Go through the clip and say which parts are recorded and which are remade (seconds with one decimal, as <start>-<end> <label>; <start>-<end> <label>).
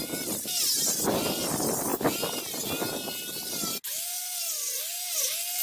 0.0-5.6 recorded